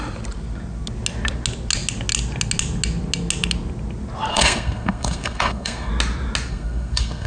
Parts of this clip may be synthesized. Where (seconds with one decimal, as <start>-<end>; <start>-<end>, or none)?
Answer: 4.3-5.9; 6.5-7.3